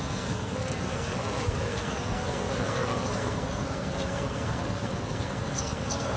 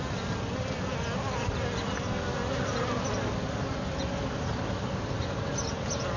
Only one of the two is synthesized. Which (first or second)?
first